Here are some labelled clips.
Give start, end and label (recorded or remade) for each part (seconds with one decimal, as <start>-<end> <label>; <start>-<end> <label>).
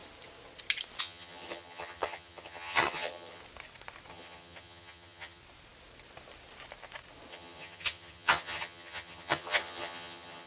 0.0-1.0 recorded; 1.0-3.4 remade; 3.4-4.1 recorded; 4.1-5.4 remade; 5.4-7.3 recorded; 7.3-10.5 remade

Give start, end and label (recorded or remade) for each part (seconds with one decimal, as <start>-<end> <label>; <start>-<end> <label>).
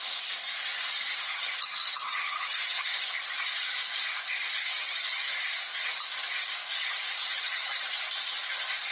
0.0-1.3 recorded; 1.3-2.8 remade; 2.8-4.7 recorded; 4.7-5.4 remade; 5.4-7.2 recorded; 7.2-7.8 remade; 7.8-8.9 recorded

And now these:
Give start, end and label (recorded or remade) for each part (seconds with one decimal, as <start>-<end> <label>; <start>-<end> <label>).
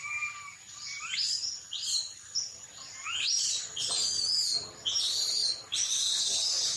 0.0-6.8 recorded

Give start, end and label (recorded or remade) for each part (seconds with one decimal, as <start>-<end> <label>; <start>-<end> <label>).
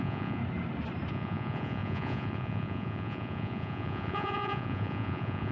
0.0-0.4 remade; 0.4-1.1 recorded; 1.1-5.5 remade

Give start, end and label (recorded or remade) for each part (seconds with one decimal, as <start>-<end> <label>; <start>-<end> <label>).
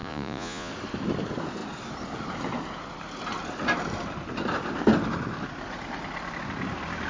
0.0-0.7 remade; 0.7-7.1 recorded